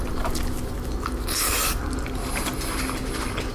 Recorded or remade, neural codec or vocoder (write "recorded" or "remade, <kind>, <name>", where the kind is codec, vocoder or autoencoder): recorded